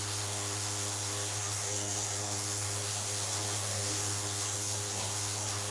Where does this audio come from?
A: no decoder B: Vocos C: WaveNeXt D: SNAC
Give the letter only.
D